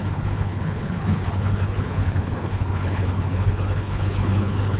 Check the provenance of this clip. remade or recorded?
remade